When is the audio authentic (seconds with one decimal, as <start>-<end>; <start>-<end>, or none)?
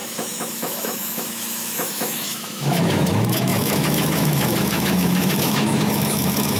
none